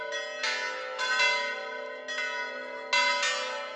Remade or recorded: recorded